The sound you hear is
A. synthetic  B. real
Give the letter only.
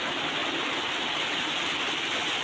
B